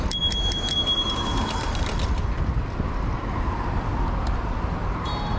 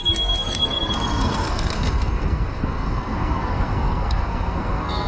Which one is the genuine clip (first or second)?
first